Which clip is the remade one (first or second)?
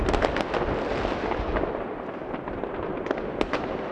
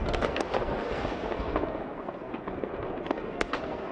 second